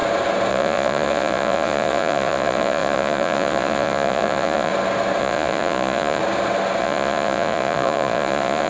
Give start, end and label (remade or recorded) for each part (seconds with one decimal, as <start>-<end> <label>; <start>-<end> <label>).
0.0-0.5 recorded; 0.5-4.7 remade; 4.7-5.2 recorded; 5.2-6.2 remade; 6.2-6.8 recorded; 6.8-8.7 remade